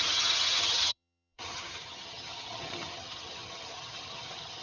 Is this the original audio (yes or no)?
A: no